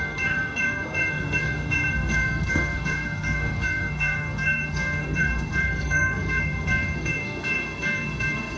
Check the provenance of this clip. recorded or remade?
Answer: remade